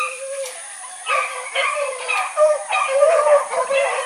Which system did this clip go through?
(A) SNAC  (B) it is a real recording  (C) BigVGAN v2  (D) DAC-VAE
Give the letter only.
C